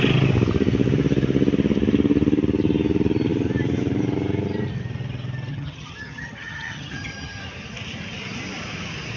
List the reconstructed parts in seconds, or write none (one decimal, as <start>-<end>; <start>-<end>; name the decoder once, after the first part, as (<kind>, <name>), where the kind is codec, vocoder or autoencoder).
5.5-7.4 (vocoder, HiFi-GAN)